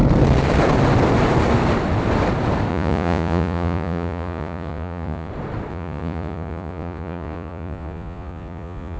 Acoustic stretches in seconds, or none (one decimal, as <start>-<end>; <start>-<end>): 0.0-2.7; 5.3-5.7